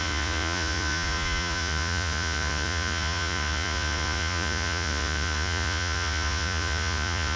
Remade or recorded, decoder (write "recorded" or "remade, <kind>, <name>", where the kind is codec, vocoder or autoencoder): remade, vocoder, Vocos